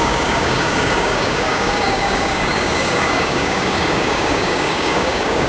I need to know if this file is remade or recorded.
remade